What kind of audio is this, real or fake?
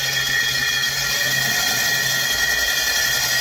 real